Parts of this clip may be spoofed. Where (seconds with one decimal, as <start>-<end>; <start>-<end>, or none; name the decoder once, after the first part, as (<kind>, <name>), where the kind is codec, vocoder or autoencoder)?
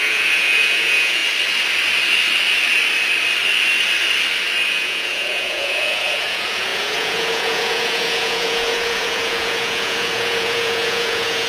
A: 0.0-1.2 (vocoder, Vocos); 4.7-11.5